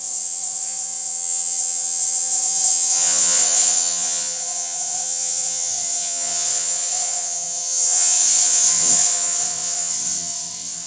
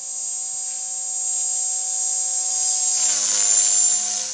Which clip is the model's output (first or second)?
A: first